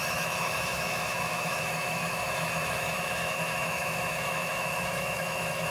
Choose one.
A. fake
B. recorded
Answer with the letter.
A